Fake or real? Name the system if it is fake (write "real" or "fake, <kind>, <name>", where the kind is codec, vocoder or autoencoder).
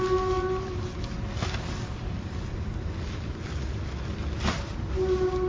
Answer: real